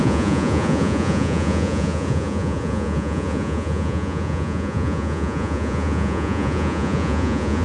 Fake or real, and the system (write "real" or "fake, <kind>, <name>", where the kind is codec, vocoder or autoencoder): fake, vocoder, Vocos